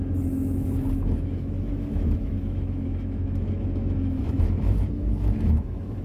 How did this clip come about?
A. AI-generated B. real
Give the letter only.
A